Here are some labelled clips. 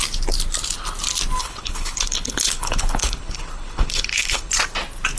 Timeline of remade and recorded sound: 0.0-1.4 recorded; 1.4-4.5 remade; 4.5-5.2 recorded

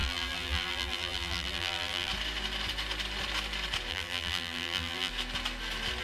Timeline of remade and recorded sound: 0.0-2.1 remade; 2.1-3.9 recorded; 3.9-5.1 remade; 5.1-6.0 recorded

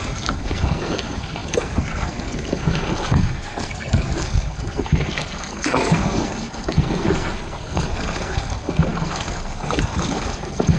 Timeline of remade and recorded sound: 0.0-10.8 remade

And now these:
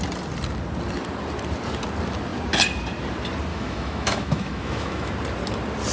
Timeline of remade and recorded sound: 0.0-3.5 recorded; 3.5-5.1 remade; 5.1-5.9 recorded

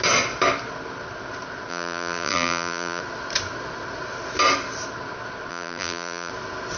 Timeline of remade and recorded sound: 0.0-1.7 recorded; 1.7-3.0 remade; 3.0-5.5 recorded; 5.5-6.3 remade; 6.3-6.8 recorded

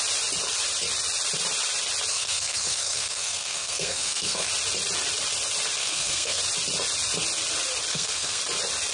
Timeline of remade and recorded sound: 0.0-2.1 recorded; 2.1-4.5 remade; 4.5-5.8 recorded; 5.8-6.4 remade; 6.4-7.9 recorded; 7.9-8.4 remade; 8.4-8.9 recorded

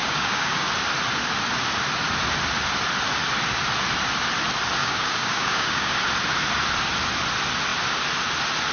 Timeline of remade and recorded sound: 0.0-0.7 remade; 0.7-4.8 recorded; 4.8-6.0 remade; 6.0-8.7 recorded